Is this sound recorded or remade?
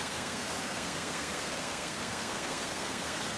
remade